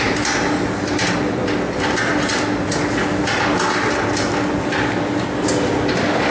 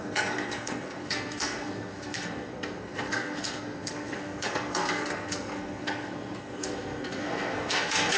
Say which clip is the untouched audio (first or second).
first